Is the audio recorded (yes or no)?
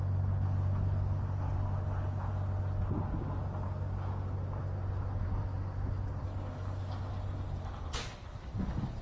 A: yes